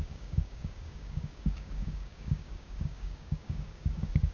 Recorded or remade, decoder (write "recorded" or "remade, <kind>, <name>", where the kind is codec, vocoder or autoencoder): remade, codec, DAC